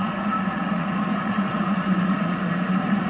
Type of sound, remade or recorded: remade